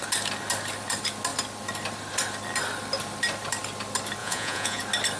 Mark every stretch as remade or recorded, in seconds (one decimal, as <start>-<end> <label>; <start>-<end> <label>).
0.0-4.2 recorded; 4.2-4.8 remade; 4.8-5.2 recorded